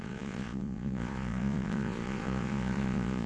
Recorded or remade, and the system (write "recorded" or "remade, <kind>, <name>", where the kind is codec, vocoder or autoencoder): remade, vocoder, Vocos